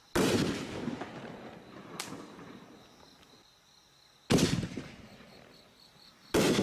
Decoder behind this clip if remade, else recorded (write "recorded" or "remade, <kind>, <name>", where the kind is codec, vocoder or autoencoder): recorded